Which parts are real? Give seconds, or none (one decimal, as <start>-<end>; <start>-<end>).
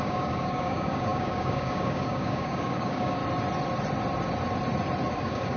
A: 3.2-5.1